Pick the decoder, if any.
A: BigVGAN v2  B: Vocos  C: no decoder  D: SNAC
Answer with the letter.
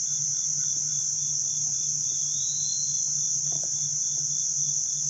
C